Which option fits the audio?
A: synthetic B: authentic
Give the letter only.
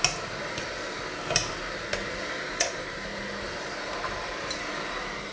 B